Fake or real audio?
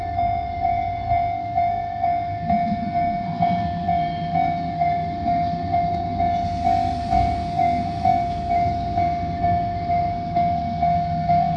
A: fake